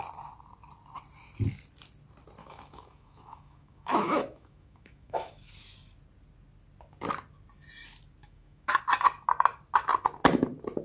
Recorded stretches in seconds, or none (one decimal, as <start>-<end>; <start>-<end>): 0.0-2.4; 5.5-8.2; 8.8-10.8